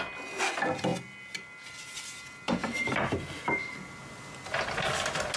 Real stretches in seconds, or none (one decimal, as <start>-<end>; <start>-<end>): 0.0-5.4